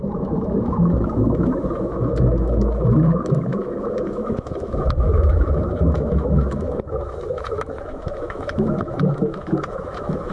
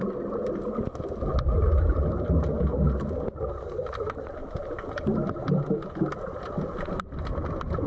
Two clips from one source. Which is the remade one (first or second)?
first